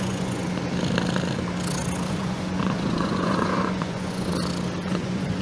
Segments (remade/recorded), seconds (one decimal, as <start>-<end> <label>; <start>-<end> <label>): 0.0-0.4 remade; 0.4-2.1 recorded; 2.1-4.3 remade; 4.3-4.8 recorded; 4.8-5.4 remade